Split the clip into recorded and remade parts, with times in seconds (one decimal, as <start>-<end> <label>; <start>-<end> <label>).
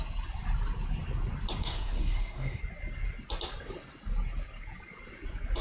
0.0-1.6 recorded; 1.6-2.6 remade; 2.6-5.6 recorded